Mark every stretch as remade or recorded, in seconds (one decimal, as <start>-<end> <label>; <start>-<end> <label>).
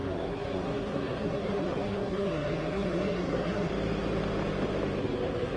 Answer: 0.0-3.7 remade; 3.7-5.0 recorded; 5.0-5.6 remade